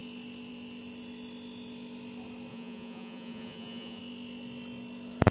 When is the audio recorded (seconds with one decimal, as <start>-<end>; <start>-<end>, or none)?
0.0-2.5; 4.0-5.3